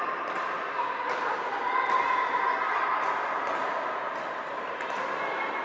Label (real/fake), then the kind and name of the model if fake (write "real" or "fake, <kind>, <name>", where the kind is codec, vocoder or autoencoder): real